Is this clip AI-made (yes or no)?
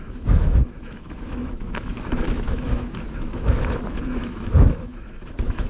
yes